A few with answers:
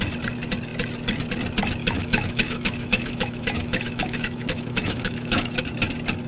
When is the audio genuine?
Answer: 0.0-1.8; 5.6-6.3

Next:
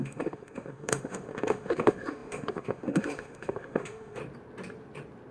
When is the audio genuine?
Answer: 4.2-5.3

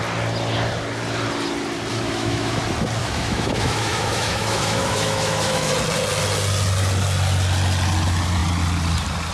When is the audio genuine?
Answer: 0.0-1.9; 2.6-3.0; 5.7-9.3

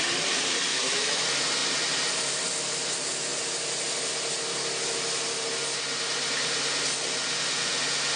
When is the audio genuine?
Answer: 0.0-0.7; 1.2-8.2